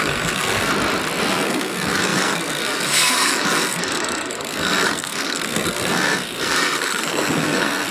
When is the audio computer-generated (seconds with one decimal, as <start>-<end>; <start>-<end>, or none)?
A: 0.0-0.7; 1.3-7.9